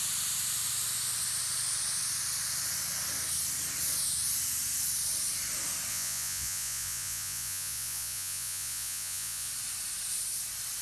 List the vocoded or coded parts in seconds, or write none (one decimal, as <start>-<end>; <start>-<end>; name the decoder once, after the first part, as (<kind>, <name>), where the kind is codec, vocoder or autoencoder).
5.9-9.5 (vocoder, Vocos)